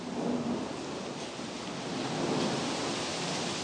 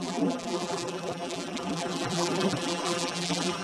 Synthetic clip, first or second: second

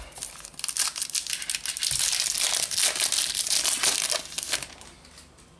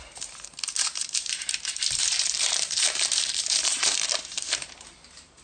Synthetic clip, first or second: second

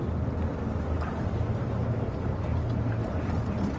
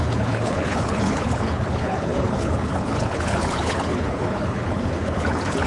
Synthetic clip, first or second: second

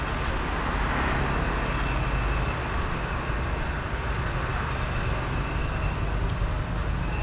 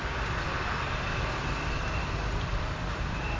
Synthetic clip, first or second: second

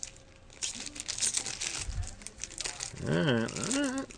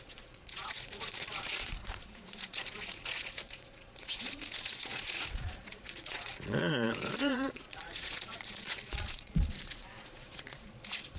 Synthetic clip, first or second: second